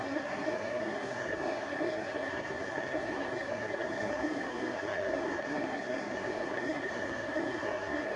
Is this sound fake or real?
fake